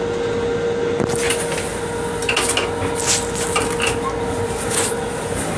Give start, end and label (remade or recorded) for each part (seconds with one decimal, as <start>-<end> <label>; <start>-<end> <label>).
0.0-5.6 recorded